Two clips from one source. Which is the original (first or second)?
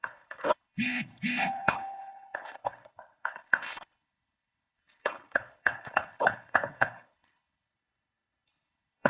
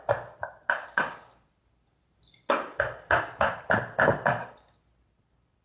second